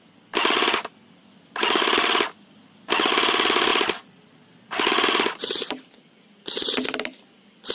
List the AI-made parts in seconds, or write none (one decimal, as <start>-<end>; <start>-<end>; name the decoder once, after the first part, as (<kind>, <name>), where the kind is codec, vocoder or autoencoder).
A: none